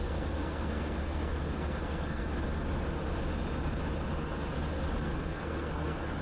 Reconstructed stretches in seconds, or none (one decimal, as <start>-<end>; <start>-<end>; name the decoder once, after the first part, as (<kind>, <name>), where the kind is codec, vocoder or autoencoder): 0.0-2.3 (codec, SNAC); 5.0-6.2